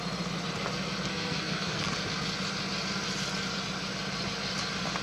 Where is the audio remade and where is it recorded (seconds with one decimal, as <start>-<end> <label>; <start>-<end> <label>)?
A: 0.0-1.1 recorded; 1.1-1.8 remade; 1.8-5.0 recorded